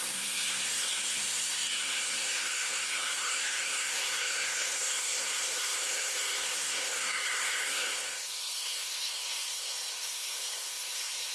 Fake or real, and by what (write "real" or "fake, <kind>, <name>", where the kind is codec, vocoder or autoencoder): fake, codec, SNAC